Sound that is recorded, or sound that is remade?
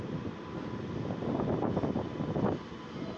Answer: recorded